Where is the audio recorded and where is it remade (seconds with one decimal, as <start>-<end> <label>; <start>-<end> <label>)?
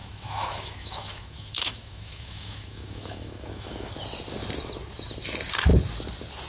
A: 0.0-3.9 remade; 3.9-6.5 recorded